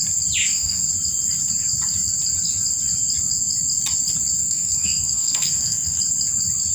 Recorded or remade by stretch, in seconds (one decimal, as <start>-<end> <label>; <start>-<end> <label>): 0.0-0.4 recorded; 0.4-0.9 remade; 0.9-4.4 recorded; 4.4-6.0 remade; 6.0-6.7 recorded

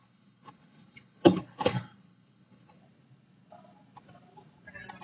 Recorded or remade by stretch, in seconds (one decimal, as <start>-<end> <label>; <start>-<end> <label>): 0.0-2.8 remade; 2.8-5.0 recorded

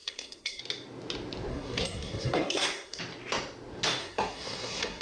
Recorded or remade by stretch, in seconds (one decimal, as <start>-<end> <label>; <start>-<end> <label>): 0.0-0.6 remade; 0.6-1.5 recorded; 1.5-3.0 remade; 3.0-4.0 recorded; 4.0-5.0 remade